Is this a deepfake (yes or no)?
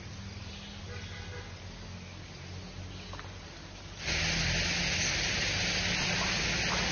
no